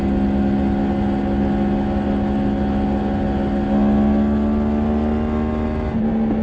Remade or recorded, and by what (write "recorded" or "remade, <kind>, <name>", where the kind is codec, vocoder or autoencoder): recorded